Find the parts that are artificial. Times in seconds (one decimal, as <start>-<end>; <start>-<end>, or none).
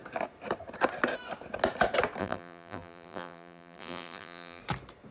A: 2.2-4.6